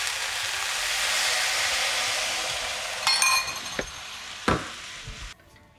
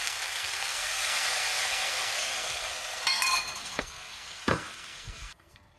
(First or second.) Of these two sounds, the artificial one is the second